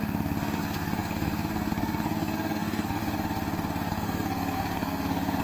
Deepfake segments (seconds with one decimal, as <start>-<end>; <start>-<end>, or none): 0.0-3.0; 3.9-5.4